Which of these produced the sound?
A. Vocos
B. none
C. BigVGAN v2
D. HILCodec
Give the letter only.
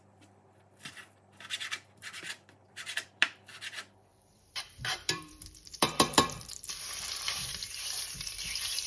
C